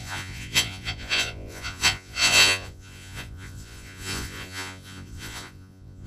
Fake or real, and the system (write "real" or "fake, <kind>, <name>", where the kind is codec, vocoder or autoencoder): fake, vocoder, Vocos